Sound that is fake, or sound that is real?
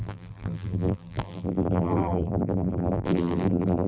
fake